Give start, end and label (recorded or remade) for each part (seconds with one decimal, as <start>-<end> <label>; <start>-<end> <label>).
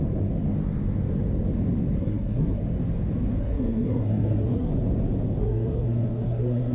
0.0-2.0 recorded; 2.0-2.6 remade; 2.6-3.4 recorded; 3.4-4.7 remade; 4.7-5.4 recorded; 5.4-6.7 remade